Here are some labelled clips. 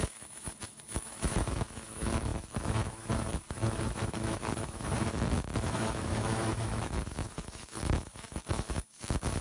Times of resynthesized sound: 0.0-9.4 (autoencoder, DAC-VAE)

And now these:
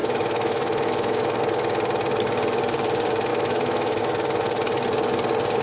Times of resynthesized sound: 0.0-1.4 (autoencoder, DAC-VAE); 3.3-4.0

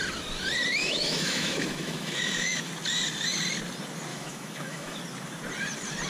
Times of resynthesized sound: 0.8-2.7 (autoencoder, DAC-VAE); 4.1-5.0

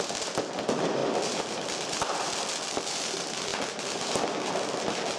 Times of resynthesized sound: none

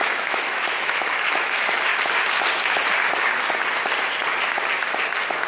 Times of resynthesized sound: 0.0-1.9 (autoencoder, DAC-VAE)

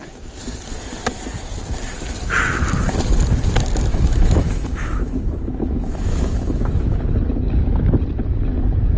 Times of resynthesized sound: 3.9-7.0 (autoencoder, DAC-VAE)

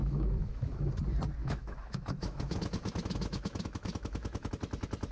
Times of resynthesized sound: 0.0-0.9 (autoencoder, DAC-VAE); 1.4-4.5